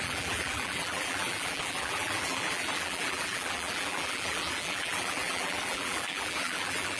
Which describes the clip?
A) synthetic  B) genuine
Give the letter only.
A